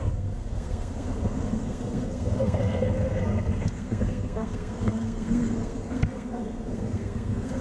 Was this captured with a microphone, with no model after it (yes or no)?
no